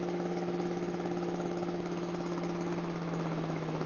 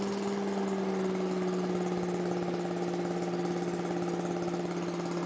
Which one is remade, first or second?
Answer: first